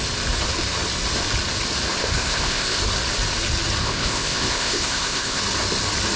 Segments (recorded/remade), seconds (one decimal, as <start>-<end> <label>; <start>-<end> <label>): 0.0-2.0 recorded; 2.0-2.8 remade; 2.8-3.8 recorded; 3.8-5.4 remade; 5.4-6.2 recorded